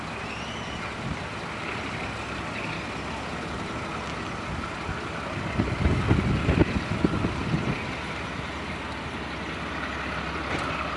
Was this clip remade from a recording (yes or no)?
no